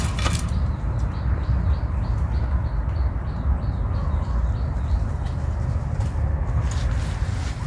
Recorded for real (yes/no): yes